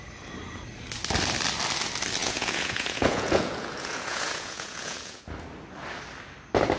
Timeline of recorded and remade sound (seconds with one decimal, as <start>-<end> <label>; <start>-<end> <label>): 0.0-2.2 recorded; 2.2-5.2 remade; 5.2-6.8 recorded